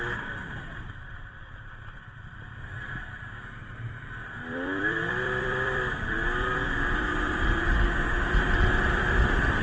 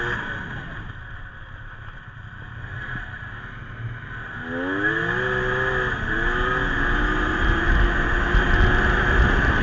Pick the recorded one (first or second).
second